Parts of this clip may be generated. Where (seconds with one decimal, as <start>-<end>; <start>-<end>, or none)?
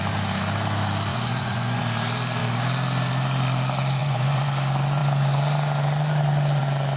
1.1-1.8; 4.0-4.5